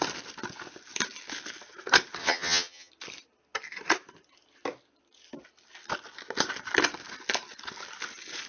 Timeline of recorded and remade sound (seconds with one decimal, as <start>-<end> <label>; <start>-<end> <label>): 0.0-2.2 recorded; 2.2-2.9 remade; 2.9-8.5 recorded